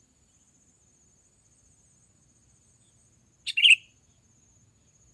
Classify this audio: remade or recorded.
recorded